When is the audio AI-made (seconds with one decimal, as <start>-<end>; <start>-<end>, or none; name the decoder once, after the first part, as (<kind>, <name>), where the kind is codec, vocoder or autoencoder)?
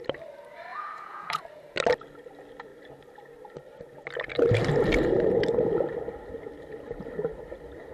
0.7-1.4 (vocoder, Vocos)